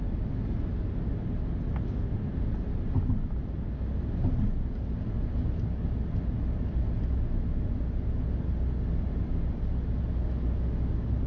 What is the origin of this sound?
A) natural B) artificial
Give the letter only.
A